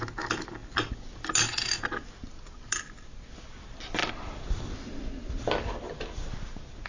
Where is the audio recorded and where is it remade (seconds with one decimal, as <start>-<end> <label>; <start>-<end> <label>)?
0.0-6.9 recorded